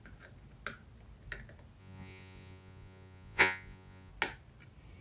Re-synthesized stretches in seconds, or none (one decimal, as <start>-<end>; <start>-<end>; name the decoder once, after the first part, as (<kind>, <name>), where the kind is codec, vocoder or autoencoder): 1.8-4.1 (vocoder, Vocos)